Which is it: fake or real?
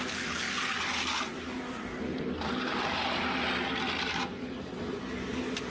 real